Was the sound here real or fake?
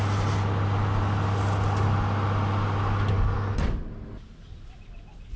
real